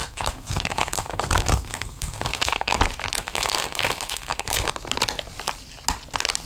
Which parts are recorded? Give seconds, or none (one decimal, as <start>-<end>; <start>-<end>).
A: 2.8-3.2; 4.7-6.5